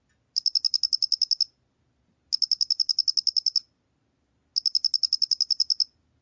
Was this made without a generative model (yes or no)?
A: yes